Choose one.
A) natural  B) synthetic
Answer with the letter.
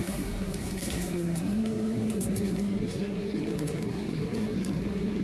B